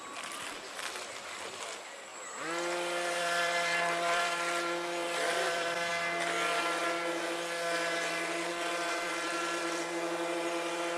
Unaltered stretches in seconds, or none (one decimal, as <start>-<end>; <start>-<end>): 5.9-8.5